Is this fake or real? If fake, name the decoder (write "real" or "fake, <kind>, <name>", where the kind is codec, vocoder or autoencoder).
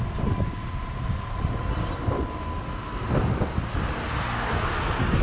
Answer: real